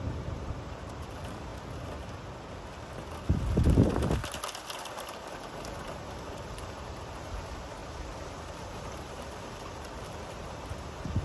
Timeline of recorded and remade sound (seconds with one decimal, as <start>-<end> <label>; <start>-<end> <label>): 0.0-1.5 remade; 1.5-4.8 recorded; 4.8-11.2 remade